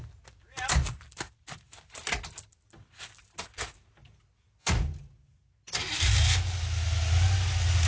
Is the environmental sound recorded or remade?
recorded